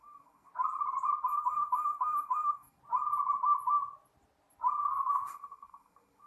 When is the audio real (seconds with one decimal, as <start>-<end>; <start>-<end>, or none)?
0.5-1.3; 2.8-4.8